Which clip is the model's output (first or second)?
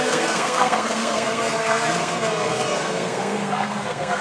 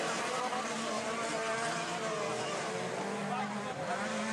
first